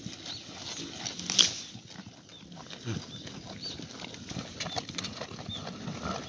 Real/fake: real